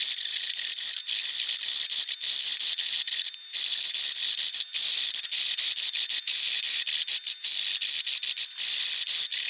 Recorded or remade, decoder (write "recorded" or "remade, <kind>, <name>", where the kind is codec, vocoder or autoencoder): recorded